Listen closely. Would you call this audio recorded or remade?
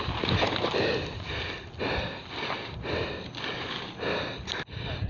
recorded